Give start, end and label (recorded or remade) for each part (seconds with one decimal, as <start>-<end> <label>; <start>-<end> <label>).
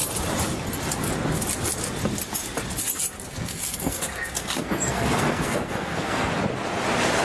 0.0-3.3 recorded; 3.3-6.3 remade; 6.3-7.2 recorded